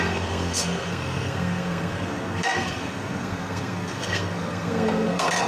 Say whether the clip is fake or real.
fake